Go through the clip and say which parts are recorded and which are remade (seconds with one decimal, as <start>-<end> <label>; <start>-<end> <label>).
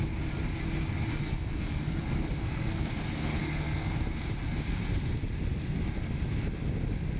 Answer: 0.0-1.2 recorded; 1.2-2.0 remade; 2.0-2.4 recorded; 2.4-2.9 remade; 2.9-3.4 recorded; 3.4-3.9 remade; 3.9-7.2 recorded